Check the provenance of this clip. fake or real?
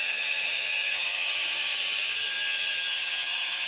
fake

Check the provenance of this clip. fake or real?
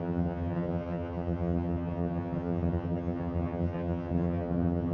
fake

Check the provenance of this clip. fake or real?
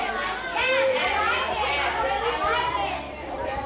real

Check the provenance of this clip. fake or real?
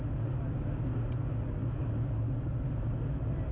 real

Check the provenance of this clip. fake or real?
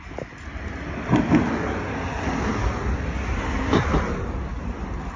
real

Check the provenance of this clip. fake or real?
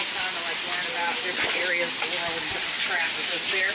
real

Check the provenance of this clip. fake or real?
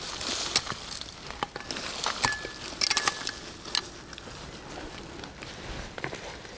real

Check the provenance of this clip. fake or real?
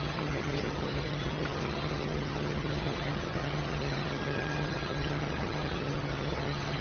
fake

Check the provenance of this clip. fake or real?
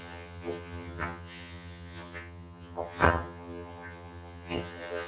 fake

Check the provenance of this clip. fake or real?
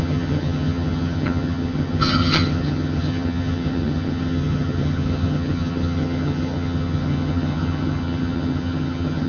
fake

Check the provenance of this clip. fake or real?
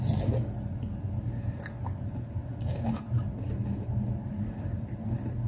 real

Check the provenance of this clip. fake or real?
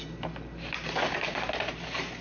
real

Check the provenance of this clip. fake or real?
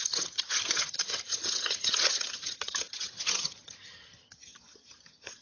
fake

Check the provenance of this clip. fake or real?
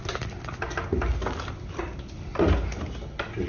real